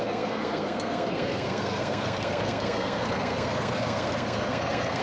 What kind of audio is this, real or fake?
fake